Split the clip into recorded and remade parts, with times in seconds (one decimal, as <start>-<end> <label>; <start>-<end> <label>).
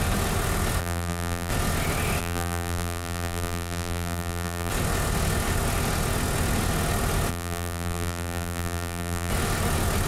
0.0-0.8 recorded; 0.8-1.5 remade; 1.5-2.2 recorded; 2.2-4.7 remade; 4.7-7.3 recorded; 7.3-9.3 remade; 9.3-10.1 recorded